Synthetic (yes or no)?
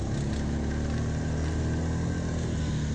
no